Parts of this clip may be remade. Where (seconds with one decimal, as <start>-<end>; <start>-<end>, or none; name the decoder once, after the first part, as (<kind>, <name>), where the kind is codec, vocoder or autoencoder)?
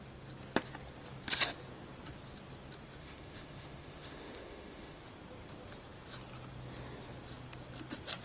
3.0-5.0 (autoencoder, DAC-VAE)